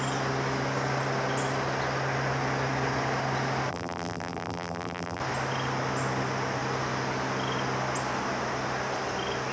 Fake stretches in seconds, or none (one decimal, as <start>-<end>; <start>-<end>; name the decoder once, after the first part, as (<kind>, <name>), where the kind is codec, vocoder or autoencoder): 3.7-5.2 (vocoder, BigVGAN v2)